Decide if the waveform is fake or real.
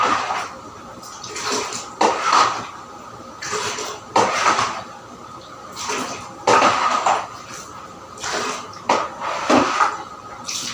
real